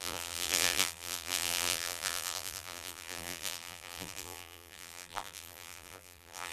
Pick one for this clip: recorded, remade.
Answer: remade